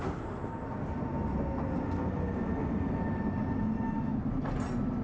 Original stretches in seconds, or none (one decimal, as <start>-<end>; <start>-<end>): 0.0-5.0